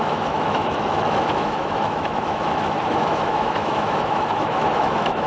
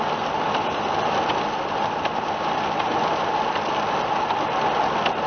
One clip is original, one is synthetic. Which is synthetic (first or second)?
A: first